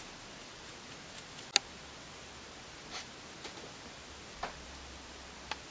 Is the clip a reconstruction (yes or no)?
no